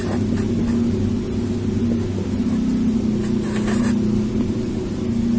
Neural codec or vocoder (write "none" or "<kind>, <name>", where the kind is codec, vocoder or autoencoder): none